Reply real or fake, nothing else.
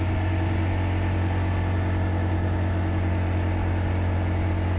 real